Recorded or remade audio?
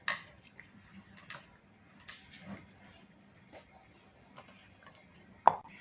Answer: recorded